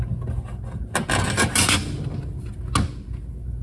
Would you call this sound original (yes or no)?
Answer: yes